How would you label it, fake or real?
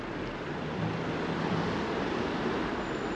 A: real